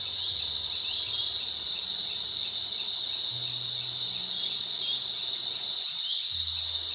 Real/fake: real